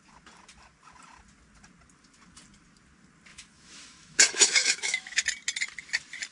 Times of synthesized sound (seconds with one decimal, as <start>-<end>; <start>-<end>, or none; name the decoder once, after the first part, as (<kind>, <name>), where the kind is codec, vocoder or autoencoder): 3.3-5.2 (autoencoder, DAC-VAE)